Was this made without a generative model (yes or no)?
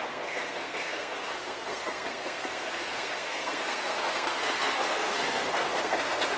no